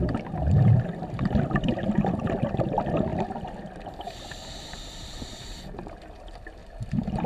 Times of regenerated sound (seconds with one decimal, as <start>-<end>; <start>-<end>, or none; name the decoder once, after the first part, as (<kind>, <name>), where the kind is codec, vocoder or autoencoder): 1.0-2.4 (vocoder, BigVGAN v2); 3.1-5.9; 6.6-7.3